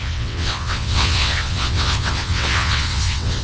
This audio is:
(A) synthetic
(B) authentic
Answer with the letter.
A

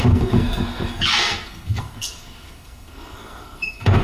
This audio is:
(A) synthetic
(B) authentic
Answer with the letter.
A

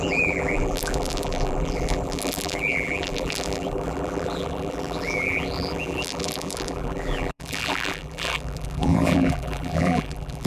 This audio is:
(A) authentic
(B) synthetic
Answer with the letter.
B